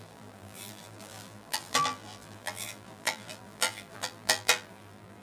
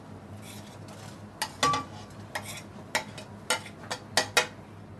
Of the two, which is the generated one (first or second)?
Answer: first